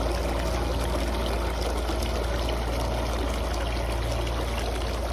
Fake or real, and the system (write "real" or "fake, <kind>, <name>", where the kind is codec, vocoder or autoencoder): real